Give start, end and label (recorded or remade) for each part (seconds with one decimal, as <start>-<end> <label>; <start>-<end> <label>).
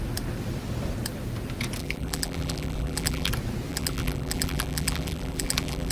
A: 0.0-1.8 recorded; 1.8-3.3 remade; 3.3-3.7 recorded; 3.7-5.9 remade